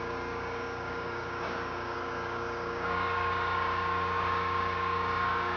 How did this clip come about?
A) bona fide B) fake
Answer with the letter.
B